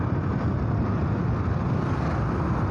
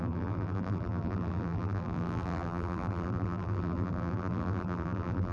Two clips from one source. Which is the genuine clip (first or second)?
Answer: first